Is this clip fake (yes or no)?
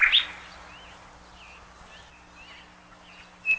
no